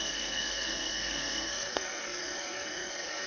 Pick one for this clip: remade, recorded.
remade